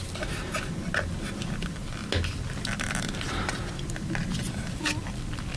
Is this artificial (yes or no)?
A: no